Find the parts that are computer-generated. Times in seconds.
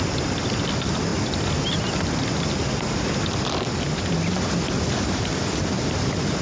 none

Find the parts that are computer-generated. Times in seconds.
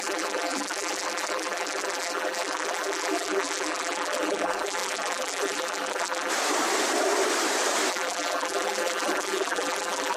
0.0-6.3 (vocoder, BigVGAN v2); 7.9-10.2